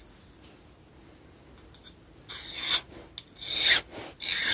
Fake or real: real